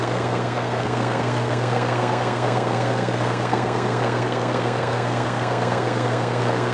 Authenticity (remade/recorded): remade